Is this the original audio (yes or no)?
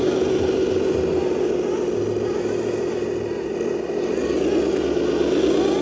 yes